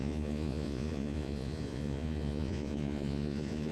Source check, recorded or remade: remade